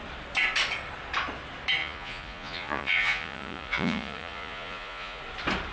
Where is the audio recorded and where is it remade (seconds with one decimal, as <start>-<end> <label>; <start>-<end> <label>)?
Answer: 0.0-1.8 recorded; 1.8-5.2 remade; 5.2-5.7 recorded